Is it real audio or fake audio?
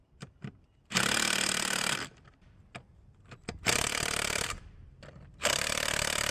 fake